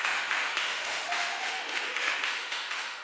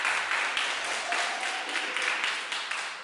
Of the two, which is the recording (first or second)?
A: second